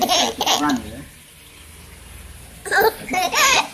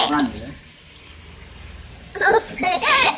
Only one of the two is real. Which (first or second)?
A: first